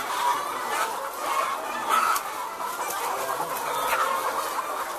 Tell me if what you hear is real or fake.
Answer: real